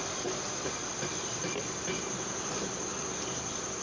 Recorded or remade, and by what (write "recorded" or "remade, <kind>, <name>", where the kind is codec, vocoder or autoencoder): recorded